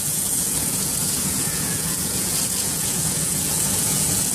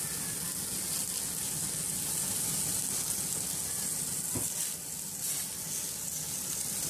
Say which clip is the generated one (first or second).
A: first